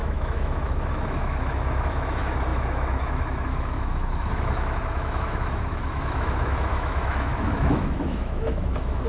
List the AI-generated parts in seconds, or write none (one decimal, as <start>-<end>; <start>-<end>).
0.0-9.1